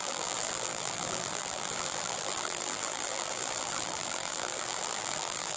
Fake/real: fake